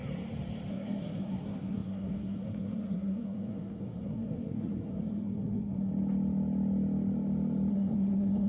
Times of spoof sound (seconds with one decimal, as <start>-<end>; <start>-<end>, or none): 0.7-5.9; 7.7-8.5